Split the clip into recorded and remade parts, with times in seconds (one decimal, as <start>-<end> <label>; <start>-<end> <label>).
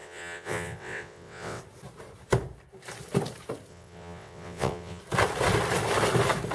0.0-1.6 remade; 1.6-3.7 recorded; 3.7-5.0 remade; 5.0-6.5 recorded